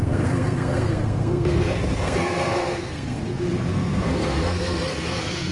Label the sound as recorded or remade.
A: remade